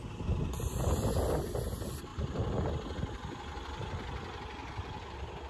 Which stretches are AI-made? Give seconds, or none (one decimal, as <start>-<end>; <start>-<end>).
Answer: 2.1-2.7